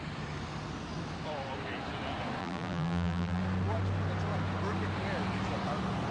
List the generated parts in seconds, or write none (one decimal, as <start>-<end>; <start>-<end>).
2.4-3.4